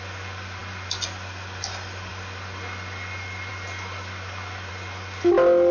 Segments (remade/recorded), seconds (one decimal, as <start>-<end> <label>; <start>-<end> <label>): 0.0-5.7 recorded